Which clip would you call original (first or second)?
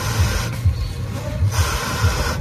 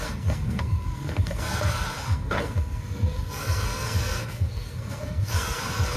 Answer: first